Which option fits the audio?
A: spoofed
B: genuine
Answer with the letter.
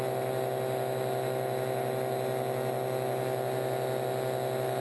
B